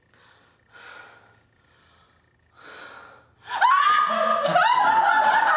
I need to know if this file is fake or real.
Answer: real